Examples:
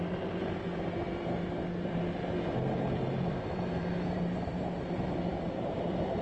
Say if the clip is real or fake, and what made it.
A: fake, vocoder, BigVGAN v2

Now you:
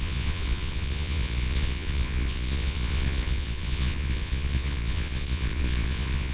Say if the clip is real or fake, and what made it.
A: fake, vocoder, Vocos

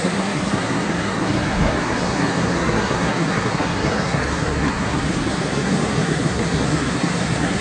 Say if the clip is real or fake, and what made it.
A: fake, codec, SNAC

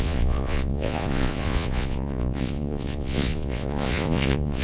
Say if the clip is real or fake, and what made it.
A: fake, vocoder, Vocos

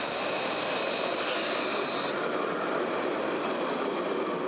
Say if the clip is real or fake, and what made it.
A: real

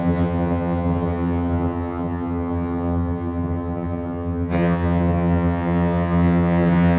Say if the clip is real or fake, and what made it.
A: fake, vocoder, HiFi-GAN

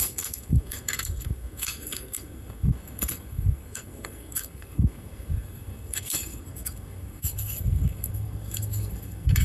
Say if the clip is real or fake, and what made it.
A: fake, codec, SNAC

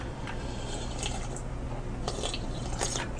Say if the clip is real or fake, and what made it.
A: real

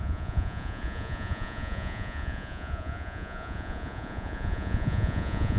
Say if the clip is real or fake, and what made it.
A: fake, vocoder, Vocos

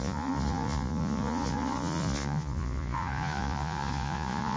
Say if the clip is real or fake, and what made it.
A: fake, vocoder, Vocos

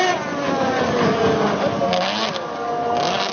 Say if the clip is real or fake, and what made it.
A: real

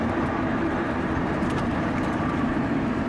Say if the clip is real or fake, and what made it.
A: fake, vocoder, BigVGAN v2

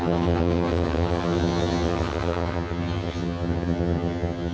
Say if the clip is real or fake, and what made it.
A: fake, vocoder, HiFi-GAN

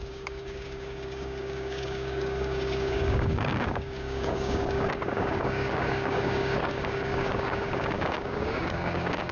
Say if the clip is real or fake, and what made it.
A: fake, codec, DAC